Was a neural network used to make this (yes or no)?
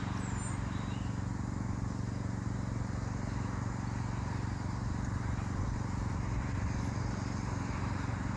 no